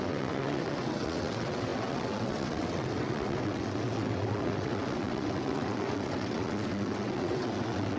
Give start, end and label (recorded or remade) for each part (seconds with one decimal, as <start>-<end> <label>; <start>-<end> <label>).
0.0-8.0 remade